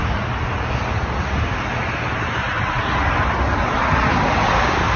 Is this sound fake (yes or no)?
no